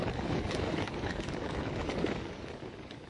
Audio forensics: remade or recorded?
remade